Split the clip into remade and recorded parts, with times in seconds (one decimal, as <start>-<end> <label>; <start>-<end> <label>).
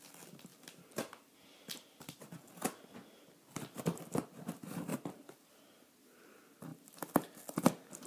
0.0-8.1 recorded